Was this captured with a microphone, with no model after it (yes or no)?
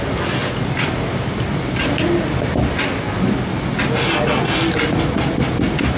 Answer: yes